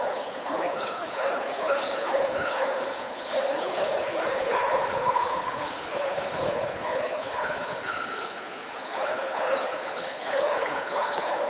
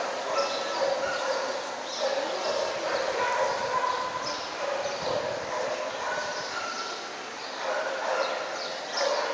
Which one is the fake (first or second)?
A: first